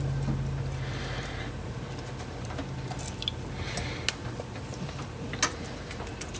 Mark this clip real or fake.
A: real